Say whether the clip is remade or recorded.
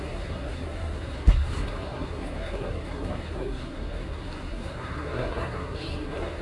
remade